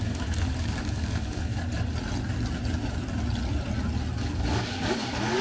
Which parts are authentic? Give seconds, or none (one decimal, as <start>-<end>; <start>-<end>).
1.5-4.2